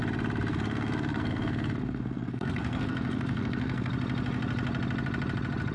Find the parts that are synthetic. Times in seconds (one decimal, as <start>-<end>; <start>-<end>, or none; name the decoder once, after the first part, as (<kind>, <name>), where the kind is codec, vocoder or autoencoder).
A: 0.5-3.9 (codec, SNAC)